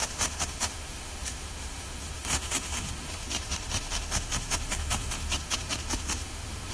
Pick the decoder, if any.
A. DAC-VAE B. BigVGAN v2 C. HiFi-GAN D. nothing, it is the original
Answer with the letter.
A